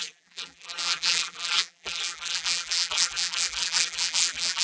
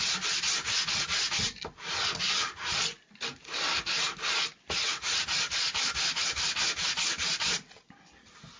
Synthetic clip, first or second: first